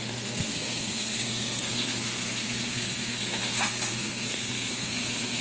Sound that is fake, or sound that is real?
fake